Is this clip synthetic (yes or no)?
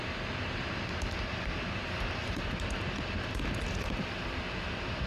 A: no